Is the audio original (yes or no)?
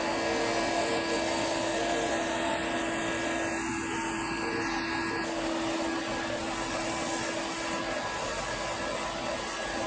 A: yes